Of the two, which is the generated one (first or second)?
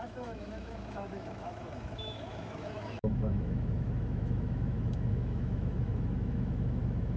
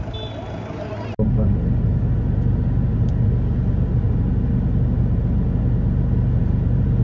first